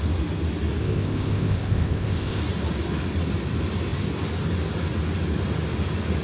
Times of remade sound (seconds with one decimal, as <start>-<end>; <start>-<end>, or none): 0.8-2.4